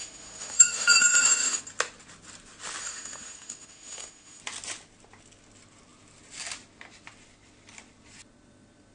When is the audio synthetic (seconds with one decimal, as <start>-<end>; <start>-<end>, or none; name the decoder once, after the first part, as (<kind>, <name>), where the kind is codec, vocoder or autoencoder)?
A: 0.0-1.6 (autoencoder, DAC-VAE); 2.8-4.4